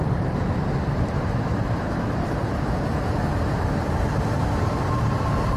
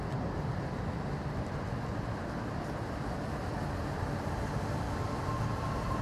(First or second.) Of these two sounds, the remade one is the first